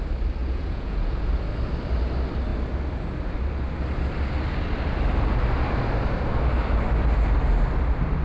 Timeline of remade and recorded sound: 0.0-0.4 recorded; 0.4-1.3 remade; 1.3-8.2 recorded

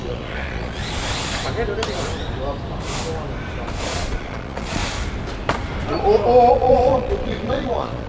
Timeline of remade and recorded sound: 0.0-0.8 remade; 0.8-3.8 recorded; 3.8-4.8 remade; 4.8-6.5 recorded; 6.5-8.1 remade